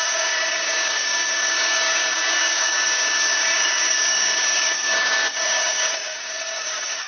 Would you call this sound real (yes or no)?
no